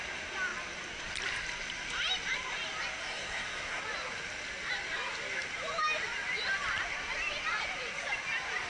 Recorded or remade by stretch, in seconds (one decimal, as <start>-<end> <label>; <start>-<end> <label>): 0.0-3.0 recorded; 3.0-3.8 remade; 3.8-8.7 recorded